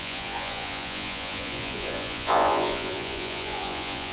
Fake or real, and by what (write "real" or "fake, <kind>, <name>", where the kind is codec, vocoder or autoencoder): fake, vocoder, Vocos